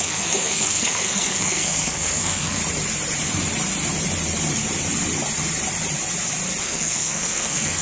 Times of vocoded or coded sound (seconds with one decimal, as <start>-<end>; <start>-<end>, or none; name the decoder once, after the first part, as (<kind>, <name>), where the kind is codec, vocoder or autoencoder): 0.0-2.6 (codec, SNAC); 6.6-7.8